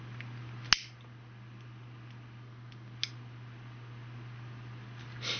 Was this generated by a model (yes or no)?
no